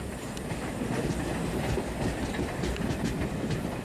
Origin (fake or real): real